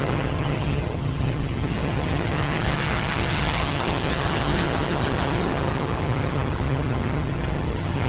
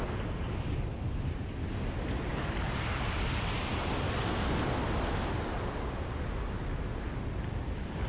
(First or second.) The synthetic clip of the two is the first